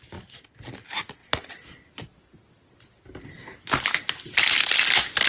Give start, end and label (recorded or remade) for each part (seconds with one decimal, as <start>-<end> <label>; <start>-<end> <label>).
0.0-5.3 recorded